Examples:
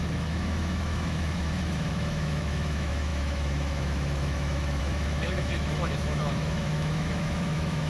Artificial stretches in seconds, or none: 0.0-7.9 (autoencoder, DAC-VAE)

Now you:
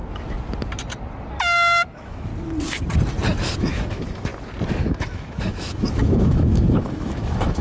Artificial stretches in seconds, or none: 1.4-2.3 (autoencoder, DAC-VAE); 3.6-4.3; 4.8-7.6

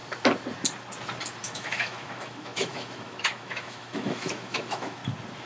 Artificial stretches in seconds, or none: 1.4-5.0 (autoencoder, DAC-VAE)